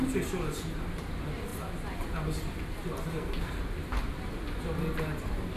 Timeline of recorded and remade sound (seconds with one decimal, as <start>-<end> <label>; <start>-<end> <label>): 0.0-3.1 recorded; 3.1-3.6 remade; 3.6-5.6 recorded